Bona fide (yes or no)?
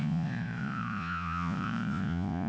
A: no